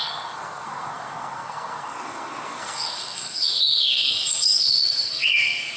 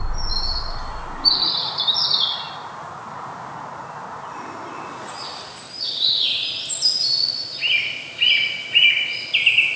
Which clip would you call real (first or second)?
second